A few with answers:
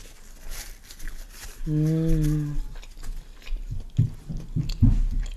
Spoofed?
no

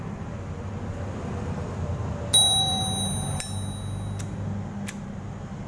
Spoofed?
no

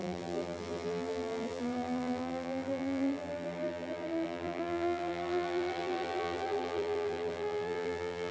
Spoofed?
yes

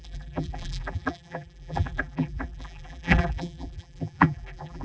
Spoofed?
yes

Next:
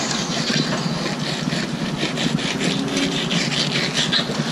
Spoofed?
no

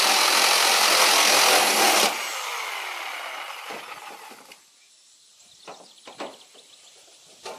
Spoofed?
no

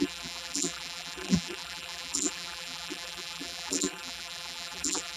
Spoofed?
yes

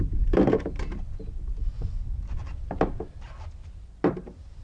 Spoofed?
no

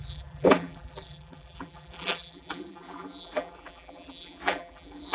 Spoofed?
yes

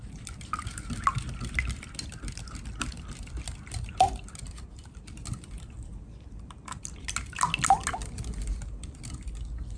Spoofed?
no